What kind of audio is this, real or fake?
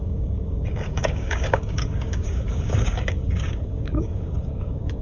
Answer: fake